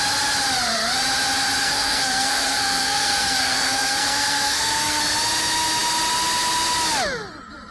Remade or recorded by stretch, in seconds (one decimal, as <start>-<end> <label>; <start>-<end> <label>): 0.0-1.6 recorded; 1.6-5.0 remade; 5.0-7.7 recorded